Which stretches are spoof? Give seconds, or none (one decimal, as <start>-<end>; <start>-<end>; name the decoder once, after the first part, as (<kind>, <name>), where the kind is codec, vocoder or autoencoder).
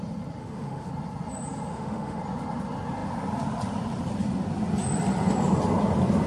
0.4-0.9 (autoencoder, DAC-VAE); 1.7-2.2